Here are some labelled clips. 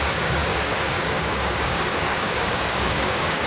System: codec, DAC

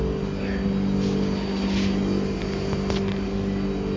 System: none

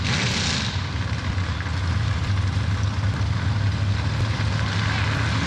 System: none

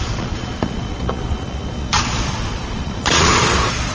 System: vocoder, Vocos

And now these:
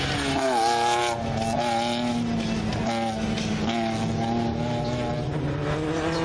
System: none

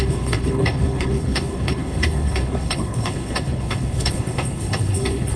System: codec, HILCodec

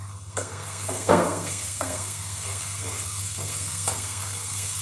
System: codec, SNAC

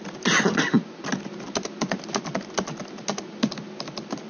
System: none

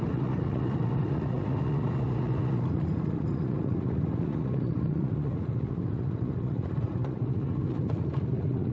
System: vocoder, Vocos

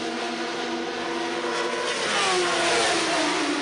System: none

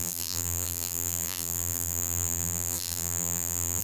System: vocoder, BigVGAN v2